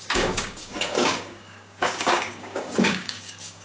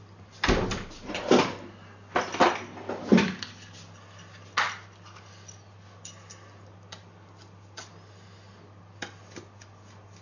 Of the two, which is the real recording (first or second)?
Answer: second